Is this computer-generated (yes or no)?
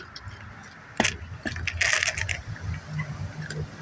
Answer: no